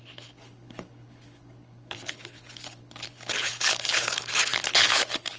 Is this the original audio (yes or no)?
no